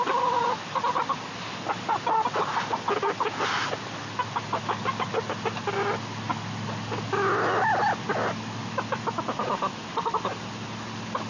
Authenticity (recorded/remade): recorded